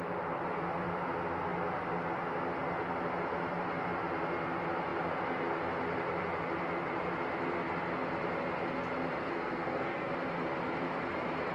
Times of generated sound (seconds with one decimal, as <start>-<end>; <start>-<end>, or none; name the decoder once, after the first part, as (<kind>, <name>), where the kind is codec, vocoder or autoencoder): 9.2-10.1 (codec, SNAC)